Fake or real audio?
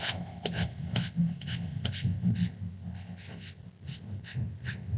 real